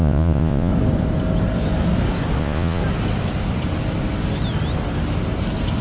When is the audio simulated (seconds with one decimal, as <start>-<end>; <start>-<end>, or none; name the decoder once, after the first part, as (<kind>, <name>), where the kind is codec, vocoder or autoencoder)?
0.0-0.7 (vocoder, Vocos); 2.4-2.8